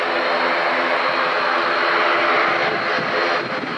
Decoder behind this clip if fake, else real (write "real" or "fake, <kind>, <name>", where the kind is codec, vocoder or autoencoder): real